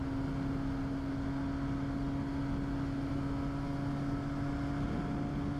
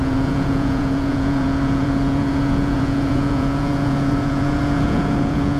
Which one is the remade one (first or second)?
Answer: second